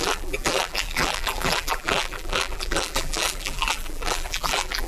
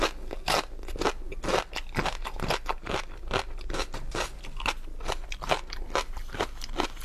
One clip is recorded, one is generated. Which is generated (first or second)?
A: first